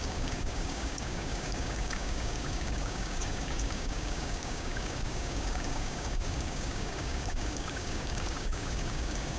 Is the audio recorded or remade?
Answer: remade